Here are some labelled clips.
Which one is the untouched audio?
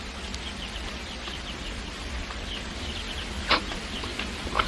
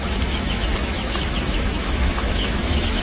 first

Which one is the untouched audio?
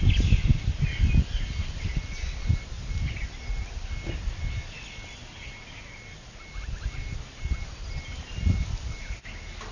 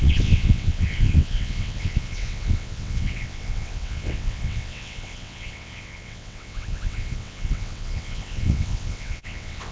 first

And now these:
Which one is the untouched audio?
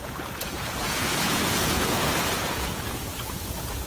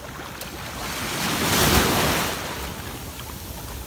second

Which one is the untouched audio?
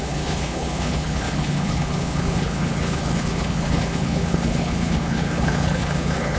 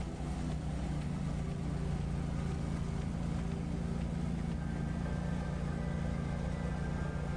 second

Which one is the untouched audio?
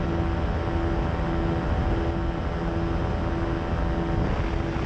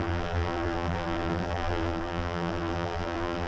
first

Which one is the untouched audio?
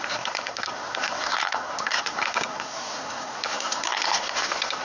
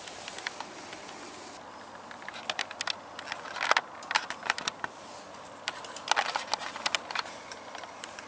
second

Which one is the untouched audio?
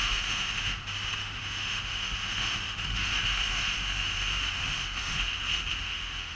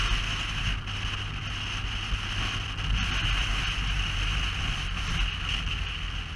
second